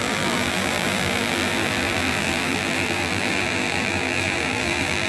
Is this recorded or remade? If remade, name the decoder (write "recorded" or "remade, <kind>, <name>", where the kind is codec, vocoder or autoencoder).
remade, vocoder, BigVGAN v2